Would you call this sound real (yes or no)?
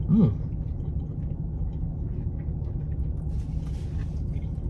yes